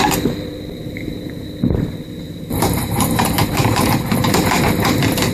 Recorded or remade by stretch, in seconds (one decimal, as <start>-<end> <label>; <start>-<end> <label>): 0.0-0.8 recorded; 0.8-4.0 remade; 4.0-5.3 recorded